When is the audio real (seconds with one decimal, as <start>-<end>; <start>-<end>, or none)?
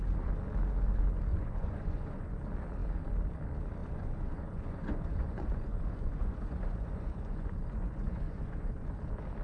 0.0-1.3; 2.4-3.8; 8.9-9.4